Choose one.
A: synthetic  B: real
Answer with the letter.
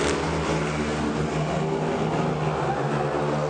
B